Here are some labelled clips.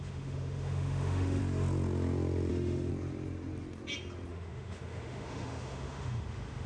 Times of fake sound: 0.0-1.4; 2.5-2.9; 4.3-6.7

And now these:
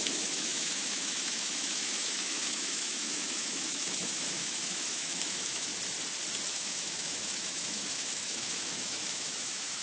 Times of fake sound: 0.0-5.7; 6.5-9.8

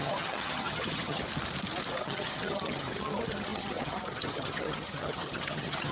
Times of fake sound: 0.0-1.2; 2.0-5.9

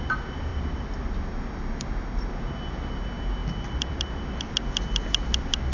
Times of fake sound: 0.5-1.4; 3.4-4.5

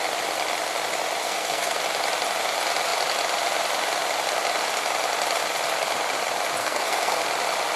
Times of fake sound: 1.2-1.8; 6.6-7.2

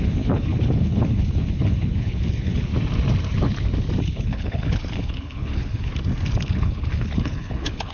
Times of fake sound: 0.0-2.7; 4.0-5.9; 6.4-7.9

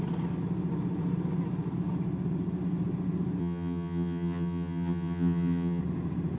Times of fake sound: 3.4-5.8